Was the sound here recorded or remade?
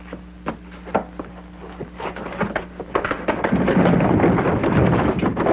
recorded